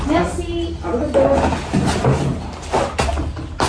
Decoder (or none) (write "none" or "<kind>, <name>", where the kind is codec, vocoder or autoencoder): none